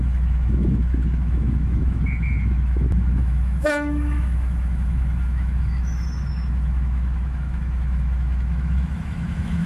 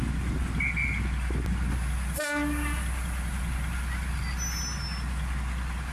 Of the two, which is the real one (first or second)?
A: second